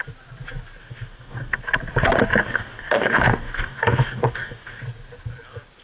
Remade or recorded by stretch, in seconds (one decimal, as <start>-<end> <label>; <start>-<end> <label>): 0.0-0.8 recorded; 0.8-1.6 remade; 1.6-2.4 recorded; 2.4-4.8 remade; 4.8-5.8 recorded